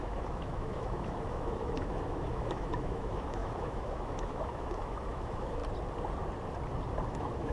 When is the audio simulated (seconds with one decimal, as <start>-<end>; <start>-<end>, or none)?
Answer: 0.0-5.6; 7.1-7.5